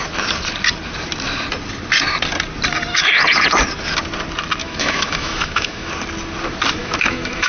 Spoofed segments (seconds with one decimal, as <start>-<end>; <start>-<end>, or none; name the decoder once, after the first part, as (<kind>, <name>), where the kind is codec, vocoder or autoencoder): 4.6-5.9 (autoencoder, DAC-VAE); 6.8-7.5